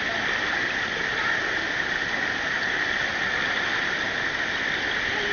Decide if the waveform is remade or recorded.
recorded